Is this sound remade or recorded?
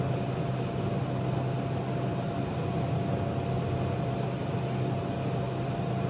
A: recorded